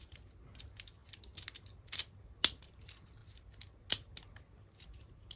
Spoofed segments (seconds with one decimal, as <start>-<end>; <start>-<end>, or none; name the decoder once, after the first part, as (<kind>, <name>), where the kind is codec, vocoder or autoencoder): none